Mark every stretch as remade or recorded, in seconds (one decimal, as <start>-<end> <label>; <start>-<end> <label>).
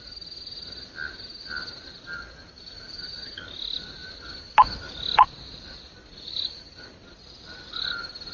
0.0-8.3 recorded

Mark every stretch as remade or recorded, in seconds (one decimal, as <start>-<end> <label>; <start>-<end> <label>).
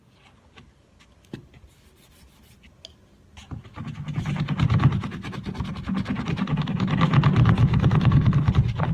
0.0-7.7 recorded; 7.7-8.5 remade; 8.5-8.9 recorded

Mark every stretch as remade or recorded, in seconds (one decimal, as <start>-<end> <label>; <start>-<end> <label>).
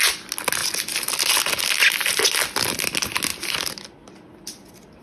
0.0-5.0 recorded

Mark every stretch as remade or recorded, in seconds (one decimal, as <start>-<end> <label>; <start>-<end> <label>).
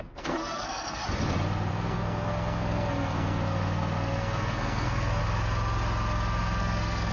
0.0-1.0 remade; 1.0-1.7 recorded; 1.7-5.2 remade; 5.2-6.6 recorded; 6.6-7.1 remade